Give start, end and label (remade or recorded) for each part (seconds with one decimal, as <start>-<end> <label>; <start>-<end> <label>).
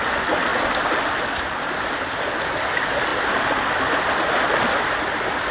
0.0-5.5 recorded